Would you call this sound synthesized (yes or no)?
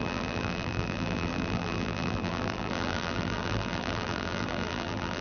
yes